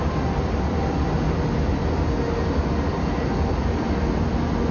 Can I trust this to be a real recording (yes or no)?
yes